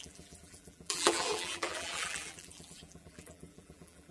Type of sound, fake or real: fake